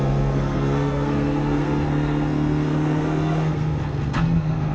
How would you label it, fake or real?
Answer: fake